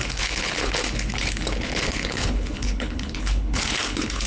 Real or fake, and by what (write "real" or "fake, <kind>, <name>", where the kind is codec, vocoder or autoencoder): fake, codec, HILCodec